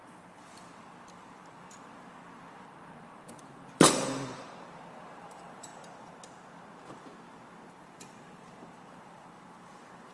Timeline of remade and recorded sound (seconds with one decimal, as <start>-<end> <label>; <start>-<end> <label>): 0.0-5.7 remade; 5.7-7.7 recorded; 7.7-10.1 remade

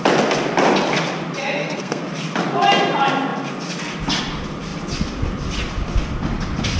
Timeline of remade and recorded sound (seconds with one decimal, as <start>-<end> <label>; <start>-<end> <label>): 0.0-1.4 recorded; 1.4-2.0 remade; 2.0-6.8 recorded